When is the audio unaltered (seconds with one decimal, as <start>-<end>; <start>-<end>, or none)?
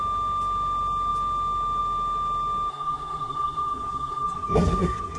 0.0-2.7